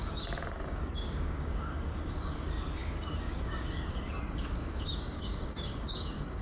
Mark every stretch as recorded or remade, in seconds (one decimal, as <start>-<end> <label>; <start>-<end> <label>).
0.0-6.4 remade